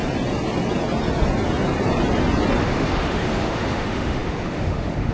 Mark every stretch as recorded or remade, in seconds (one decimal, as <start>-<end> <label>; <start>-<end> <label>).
0.0-2.6 recorded; 2.6-5.1 remade